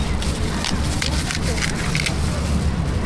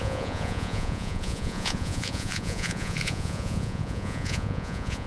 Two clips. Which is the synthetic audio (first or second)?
second